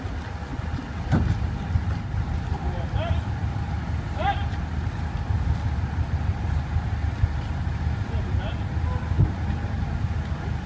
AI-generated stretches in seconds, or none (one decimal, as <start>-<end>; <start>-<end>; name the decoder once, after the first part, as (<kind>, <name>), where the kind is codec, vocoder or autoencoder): none